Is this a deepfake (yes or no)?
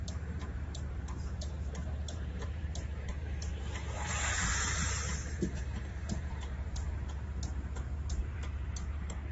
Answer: yes